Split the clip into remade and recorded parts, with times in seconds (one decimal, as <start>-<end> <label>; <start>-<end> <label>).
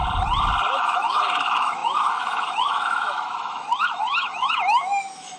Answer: 0.0-0.7 recorded; 0.7-5.4 remade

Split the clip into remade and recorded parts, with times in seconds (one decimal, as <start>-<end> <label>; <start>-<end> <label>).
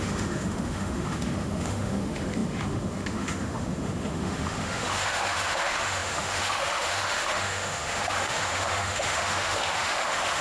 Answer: 0.0-10.4 remade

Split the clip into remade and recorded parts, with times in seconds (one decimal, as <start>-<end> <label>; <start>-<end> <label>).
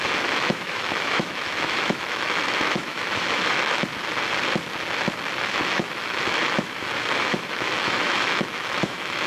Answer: 0.0-3.9 remade; 3.9-5.4 recorded; 5.4-9.3 remade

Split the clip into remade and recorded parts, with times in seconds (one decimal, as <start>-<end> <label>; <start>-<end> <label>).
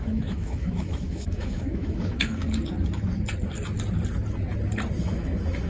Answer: 0.0-2.4 remade; 2.4-5.0 recorded; 5.0-5.7 remade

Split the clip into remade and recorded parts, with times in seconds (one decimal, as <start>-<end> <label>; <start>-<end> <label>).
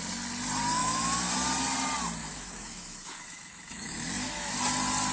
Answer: 0.0-0.8 recorded; 0.8-1.3 remade; 1.3-2.2 recorded; 2.2-4.6 remade; 4.6-5.1 recorded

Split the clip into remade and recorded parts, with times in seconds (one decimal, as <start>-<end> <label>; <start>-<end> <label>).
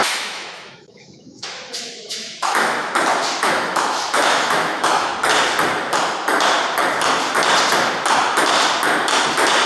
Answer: 0.0-2.9 remade; 2.9-3.4 recorded; 3.4-5.1 remade; 5.1-9.7 recorded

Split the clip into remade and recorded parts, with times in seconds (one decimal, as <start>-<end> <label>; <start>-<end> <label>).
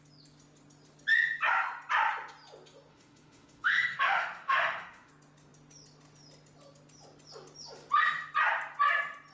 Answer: 0.0-2.9 recorded; 2.9-5.1 remade; 5.1-9.3 recorded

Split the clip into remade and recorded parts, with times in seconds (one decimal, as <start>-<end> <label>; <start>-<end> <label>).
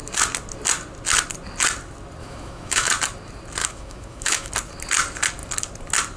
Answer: 0.0-2.2 recorded; 2.2-2.9 remade; 2.9-3.6 recorded; 3.6-4.5 remade; 4.5-6.2 recorded